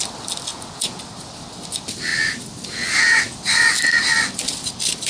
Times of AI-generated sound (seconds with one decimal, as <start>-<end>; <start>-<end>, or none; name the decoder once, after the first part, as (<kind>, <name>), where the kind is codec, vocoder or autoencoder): 0.5-1.0 (vocoder, Vocos)